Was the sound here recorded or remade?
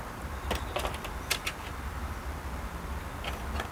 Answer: recorded